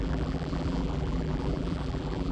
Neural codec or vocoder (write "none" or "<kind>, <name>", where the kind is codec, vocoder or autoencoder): vocoder, BigVGAN v2